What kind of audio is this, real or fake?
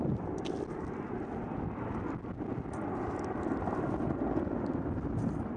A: real